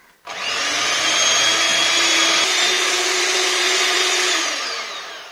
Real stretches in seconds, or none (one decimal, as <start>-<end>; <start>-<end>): 0.0-1.7